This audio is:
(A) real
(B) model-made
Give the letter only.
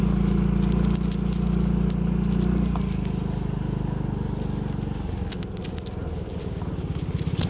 A